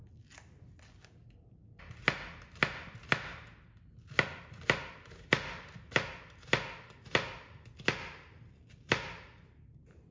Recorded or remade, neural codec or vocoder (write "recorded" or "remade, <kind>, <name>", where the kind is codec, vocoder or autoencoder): recorded